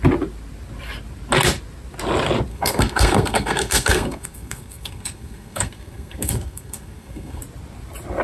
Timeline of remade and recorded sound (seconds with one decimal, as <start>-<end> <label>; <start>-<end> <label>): 0.0-2.5 recorded; 2.5-7.4 remade; 7.4-8.2 recorded